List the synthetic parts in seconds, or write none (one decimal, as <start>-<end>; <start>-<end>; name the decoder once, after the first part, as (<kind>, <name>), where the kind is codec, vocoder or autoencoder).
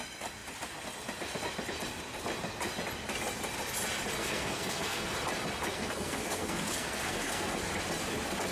4.2-5.0 (codec, SNAC); 5.7-7.7